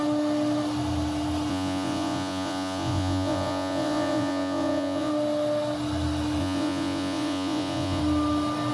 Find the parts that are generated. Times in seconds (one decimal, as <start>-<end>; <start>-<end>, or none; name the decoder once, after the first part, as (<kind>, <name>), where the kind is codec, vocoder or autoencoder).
1.5-5.1 (vocoder, Vocos); 6.4-8.0